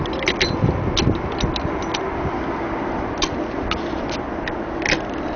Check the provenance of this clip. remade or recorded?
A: recorded